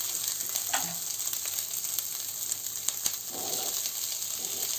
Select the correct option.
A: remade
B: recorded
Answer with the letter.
B